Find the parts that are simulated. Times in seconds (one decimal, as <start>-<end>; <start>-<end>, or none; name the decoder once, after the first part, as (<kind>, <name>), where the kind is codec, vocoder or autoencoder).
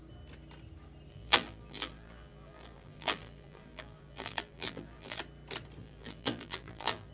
1.1-5.2 (vocoder, BigVGAN v2); 5.8-7.1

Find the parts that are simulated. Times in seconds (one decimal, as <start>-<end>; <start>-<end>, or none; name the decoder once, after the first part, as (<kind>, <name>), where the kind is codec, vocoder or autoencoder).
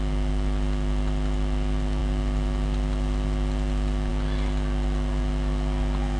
none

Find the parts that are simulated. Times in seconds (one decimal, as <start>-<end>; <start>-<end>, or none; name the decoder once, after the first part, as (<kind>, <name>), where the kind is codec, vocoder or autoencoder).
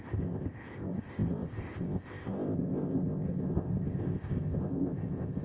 0.0-5.4 (codec, ZipCodec)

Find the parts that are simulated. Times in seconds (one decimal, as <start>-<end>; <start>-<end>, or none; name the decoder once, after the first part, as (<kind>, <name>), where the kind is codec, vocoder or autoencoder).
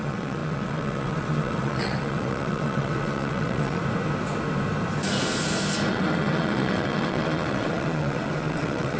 0.0-3.8 (vocoder, WaveNeXt); 5.9-9.0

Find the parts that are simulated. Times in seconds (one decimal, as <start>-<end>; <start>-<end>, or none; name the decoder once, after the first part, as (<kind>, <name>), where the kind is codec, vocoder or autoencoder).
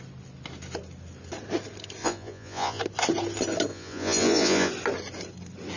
2.0-2.8 (vocoder, Vocos); 3.7-4.7